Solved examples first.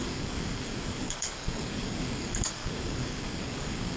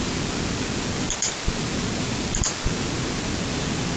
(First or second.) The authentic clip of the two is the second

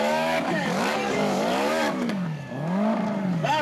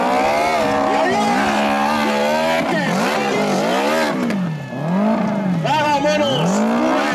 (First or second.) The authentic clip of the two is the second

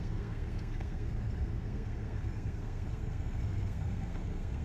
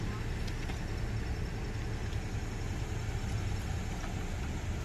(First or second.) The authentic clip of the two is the second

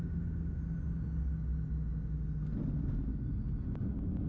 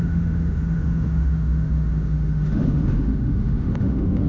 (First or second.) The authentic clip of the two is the first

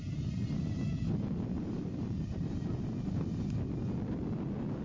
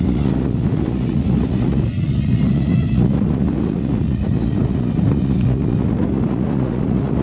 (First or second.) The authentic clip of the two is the first